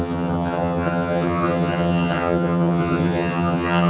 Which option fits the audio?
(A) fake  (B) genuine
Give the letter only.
A